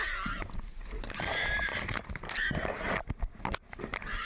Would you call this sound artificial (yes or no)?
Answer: no